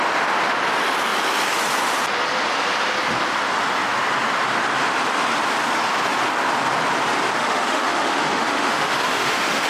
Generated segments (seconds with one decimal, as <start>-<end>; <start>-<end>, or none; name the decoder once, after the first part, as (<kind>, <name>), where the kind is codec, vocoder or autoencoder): 7.4-9.7 (autoencoder, DAC-VAE)